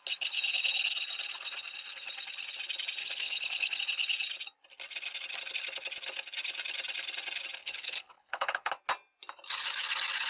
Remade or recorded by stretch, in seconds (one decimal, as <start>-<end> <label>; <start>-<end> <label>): 0.0-3.0 recorded; 3.0-3.8 remade; 3.8-7.6 recorded; 7.6-8.7 remade; 8.7-10.3 recorded